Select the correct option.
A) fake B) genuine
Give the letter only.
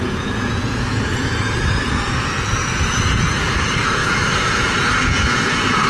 A